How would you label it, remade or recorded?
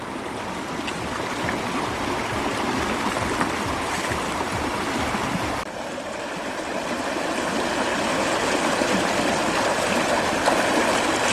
recorded